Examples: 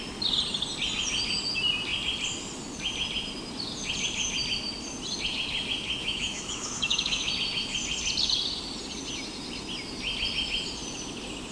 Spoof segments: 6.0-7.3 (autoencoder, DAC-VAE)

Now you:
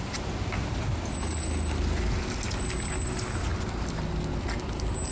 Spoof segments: none

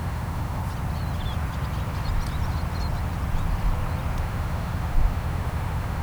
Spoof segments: 0.0-0.6 (autoencoder, DAC-VAE); 4.2-6.0

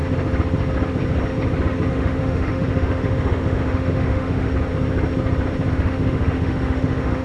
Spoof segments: 1.9-4.5 (autoencoder, DAC-VAE); 5.7-7.2

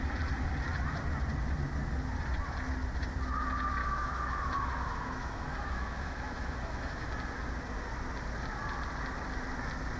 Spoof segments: 3.8-7.1 (autoencoder, DAC-VAE)

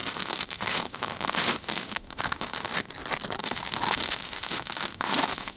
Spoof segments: 0.0-2.9 (autoencoder, DAC-VAE); 3.4-5.6